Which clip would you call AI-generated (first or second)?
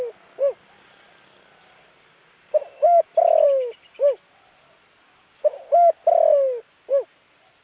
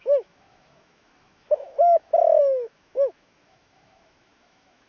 second